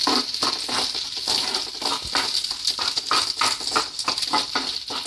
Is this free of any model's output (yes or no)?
yes